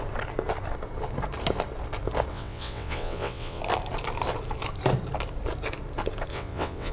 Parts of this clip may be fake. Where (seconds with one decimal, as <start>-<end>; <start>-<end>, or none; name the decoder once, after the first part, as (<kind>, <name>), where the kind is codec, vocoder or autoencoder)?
2.3-3.6 (vocoder, WaveNeXt); 6.3-6.9